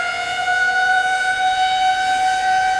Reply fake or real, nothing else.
fake